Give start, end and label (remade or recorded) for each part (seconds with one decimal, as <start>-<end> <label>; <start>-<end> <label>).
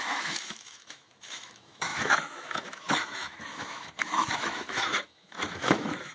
0.0-6.1 remade